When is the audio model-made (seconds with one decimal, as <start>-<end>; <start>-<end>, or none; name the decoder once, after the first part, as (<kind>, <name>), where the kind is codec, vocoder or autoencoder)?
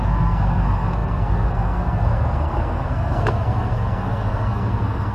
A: 0.0-5.1 (codec, SNAC)